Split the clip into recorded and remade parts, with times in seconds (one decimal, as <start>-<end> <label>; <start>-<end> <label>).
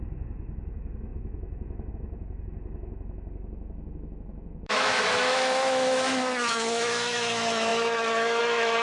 0.0-8.8 remade